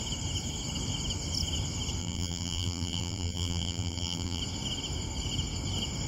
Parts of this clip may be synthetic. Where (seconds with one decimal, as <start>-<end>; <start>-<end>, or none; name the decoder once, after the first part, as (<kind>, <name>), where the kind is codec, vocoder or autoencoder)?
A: 2.0-4.4 (vocoder, BigVGAN v2)